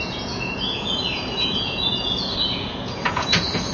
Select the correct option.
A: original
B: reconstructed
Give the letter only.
B